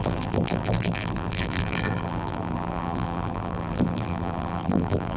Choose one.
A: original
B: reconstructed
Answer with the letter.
B